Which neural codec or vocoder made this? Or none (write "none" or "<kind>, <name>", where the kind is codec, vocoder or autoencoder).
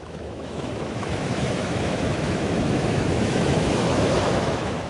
autoencoder, DAC-VAE